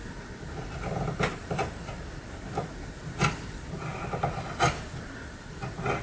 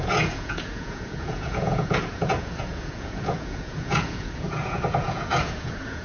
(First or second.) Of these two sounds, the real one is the first